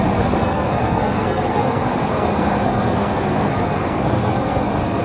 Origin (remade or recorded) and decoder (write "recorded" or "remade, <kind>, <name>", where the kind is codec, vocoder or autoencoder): remade, codec, SNAC